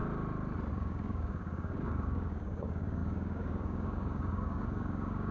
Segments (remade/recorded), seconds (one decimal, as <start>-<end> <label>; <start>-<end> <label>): 0.0-0.7 recorded; 0.7-5.3 remade